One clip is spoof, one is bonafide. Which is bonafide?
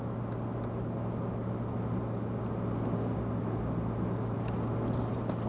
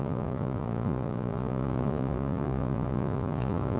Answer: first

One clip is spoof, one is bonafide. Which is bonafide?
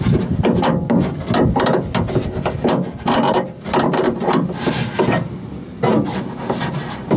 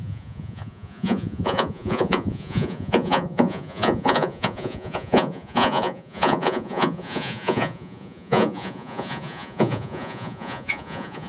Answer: first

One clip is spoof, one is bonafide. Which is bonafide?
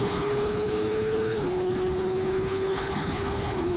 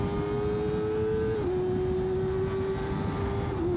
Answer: second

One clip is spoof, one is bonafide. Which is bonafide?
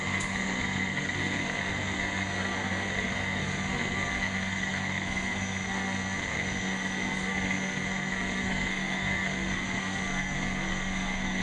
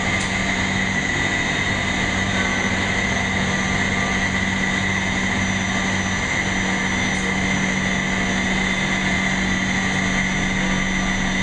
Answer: second